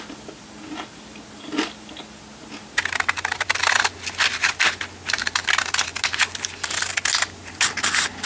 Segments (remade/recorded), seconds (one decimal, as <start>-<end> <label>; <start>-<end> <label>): 0.0-8.3 recorded